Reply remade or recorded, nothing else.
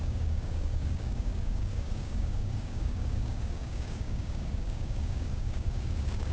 remade